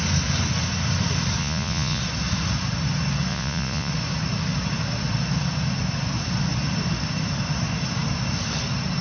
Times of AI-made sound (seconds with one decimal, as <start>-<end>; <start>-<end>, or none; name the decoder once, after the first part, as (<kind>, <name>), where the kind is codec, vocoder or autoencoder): 1.4-2.0 (vocoder, Vocos); 3.3-3.9